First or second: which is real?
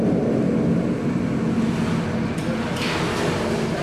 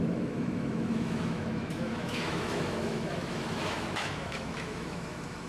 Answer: first